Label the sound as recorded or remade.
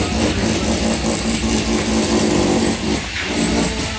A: recorded